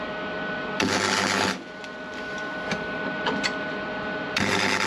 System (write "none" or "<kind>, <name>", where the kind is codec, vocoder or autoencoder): none